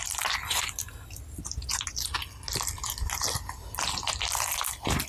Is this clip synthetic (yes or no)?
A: no